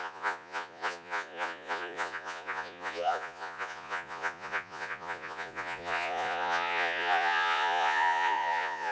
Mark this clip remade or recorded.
remade